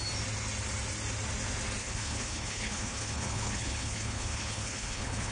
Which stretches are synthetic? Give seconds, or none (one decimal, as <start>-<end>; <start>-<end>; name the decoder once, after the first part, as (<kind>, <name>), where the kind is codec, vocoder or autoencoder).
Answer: 1.8-5.3 (codec, HILCodec)